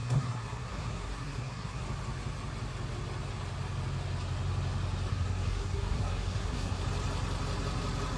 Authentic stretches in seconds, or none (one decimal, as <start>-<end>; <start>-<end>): 1.8-5.1; 6.8-8.2